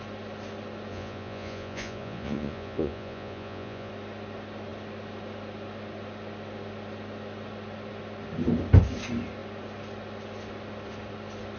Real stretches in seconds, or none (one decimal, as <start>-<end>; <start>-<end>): 0.0-0.9; 3.9-11.6